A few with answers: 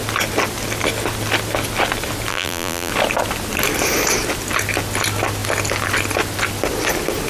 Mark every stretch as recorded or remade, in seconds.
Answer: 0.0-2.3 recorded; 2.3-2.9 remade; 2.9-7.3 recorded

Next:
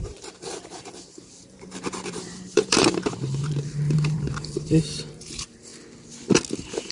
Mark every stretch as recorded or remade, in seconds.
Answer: 0.0-5.7 remade; 5.7-6.5 recorded; 6.5-6.9 remade